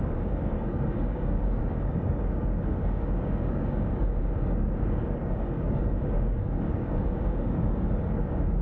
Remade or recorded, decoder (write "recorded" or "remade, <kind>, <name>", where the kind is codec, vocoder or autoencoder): remade, codec, DAC